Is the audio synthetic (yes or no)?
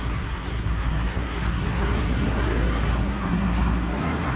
yes